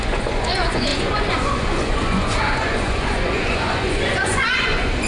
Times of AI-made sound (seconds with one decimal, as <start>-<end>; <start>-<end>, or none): 0.0-5.1

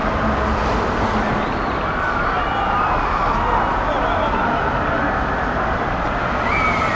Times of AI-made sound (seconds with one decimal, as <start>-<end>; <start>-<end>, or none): none

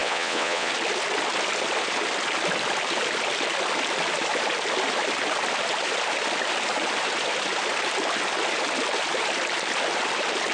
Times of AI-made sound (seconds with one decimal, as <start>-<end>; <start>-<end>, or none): 0.0-0.7

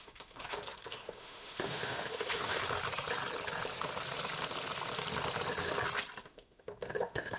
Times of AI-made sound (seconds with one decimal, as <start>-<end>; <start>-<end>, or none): 0.0-2.6; 6.2-7.4

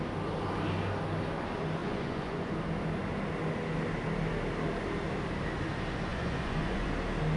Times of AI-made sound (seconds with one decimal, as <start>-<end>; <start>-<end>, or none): 1.8-2.5; 6.1-6.9

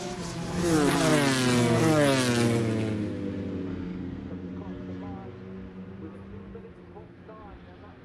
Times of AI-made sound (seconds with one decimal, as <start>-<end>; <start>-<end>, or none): 3.7-4.3

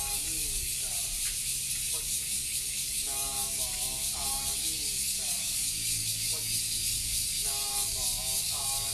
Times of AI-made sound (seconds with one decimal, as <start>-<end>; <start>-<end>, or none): 0.0-0.8; 1.7-8.9